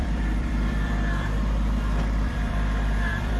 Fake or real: fake